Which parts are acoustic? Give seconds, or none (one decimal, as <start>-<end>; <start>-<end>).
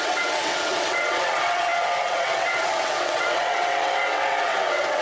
none